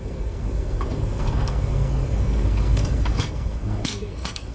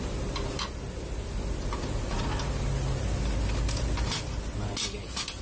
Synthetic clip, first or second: first